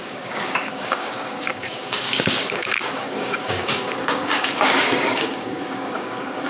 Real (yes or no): no